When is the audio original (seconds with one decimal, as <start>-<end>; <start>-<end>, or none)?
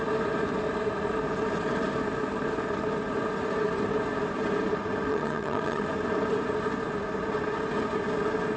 0.0-5.1; 5.8-8.6